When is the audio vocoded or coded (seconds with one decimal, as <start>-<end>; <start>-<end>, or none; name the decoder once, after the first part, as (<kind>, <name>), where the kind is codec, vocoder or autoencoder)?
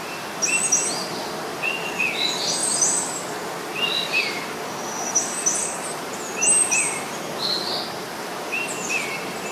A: none